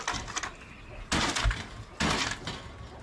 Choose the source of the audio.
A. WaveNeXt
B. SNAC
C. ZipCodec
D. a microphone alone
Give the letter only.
D